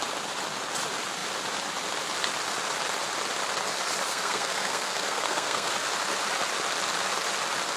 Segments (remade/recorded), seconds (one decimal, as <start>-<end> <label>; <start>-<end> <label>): 0.0-4.1 recorded; 4.1-5.7 remade; 5.7-7.8 recorded